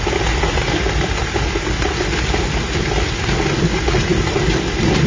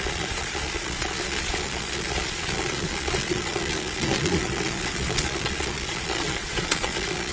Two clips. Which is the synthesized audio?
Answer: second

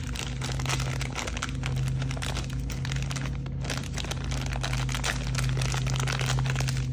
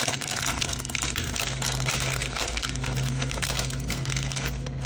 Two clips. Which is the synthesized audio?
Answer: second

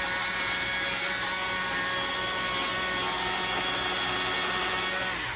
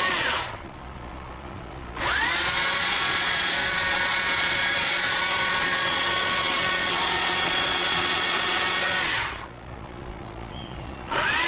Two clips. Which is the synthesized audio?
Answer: second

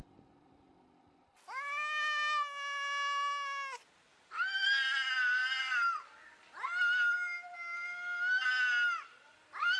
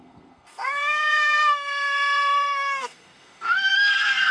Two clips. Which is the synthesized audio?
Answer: second